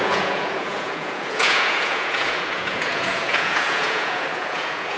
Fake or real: fake